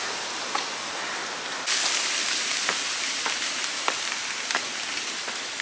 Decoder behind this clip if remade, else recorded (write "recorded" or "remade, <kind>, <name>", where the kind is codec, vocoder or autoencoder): recorded